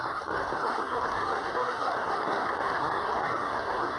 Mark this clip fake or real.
fake